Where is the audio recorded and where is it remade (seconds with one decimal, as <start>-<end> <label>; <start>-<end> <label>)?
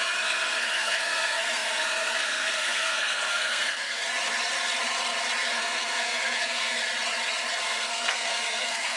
0.0-4.0 remade; 4.0-5.5 recorded; 5.5-6.8 remade; 6.8-7.6 recorded; 7.6-9.0 remade